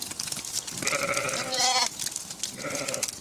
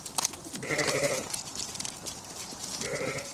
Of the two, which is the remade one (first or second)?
second